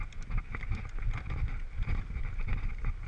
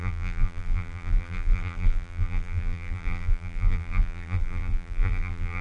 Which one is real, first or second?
first